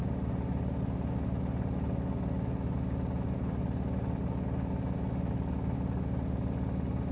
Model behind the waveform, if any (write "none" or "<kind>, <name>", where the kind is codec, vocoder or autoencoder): none